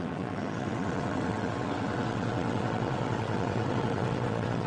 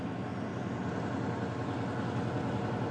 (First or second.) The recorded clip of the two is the second